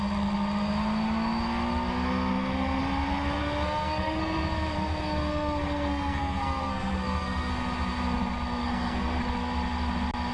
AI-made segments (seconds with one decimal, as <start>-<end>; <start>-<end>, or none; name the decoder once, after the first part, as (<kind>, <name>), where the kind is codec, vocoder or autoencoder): 2.3-2.8 (codec, SNAC); 3.4-7.5; 8.6-9.2